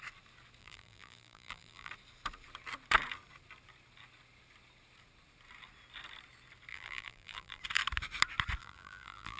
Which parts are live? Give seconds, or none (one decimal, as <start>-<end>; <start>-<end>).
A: 0.0-0.6; 1.9-6.7; 7.6-8.6